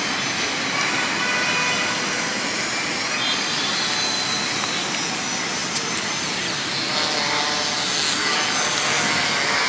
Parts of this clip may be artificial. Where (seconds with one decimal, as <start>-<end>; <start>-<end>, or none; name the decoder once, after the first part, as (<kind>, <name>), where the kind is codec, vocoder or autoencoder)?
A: none